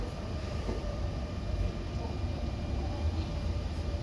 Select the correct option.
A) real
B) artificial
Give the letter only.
B